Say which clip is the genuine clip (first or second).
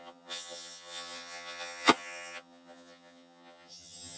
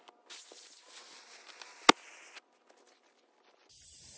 second